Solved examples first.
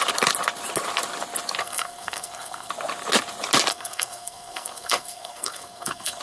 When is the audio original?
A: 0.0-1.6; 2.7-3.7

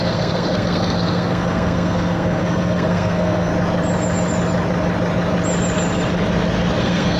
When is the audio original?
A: 3.5-6.8

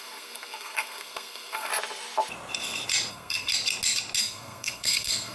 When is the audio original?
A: 1.7-3.1; 3.5-4.2